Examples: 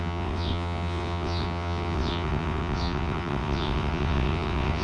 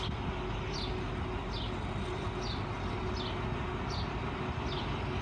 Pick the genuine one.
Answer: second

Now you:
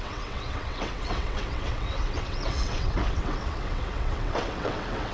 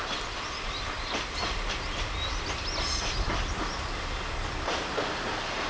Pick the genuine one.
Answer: second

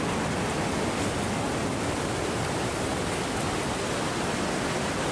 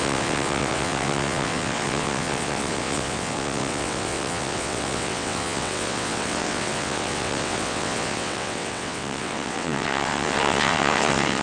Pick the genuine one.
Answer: first